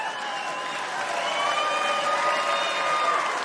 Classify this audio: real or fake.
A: real